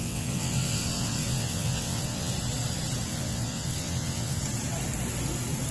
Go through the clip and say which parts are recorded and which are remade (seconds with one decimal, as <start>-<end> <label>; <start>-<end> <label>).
0.0-2.3 remade; 2.3-3.1 recorded; 3.1-4.4 remade; 4.4-5.7 recorded